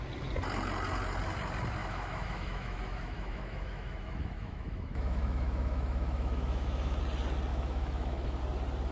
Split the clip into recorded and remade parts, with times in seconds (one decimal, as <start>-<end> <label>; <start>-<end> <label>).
0.0-1.8 recorded; 1.8-7.0 remade; 7.0-7.5 recorded; 7.5-8.4 remade; 8.4-8.9 recorded